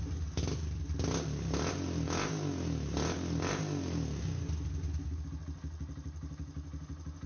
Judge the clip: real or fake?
real